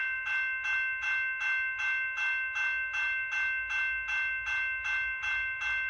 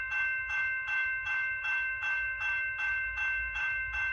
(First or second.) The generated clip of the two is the second